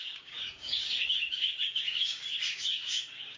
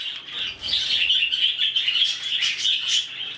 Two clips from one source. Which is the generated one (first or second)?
first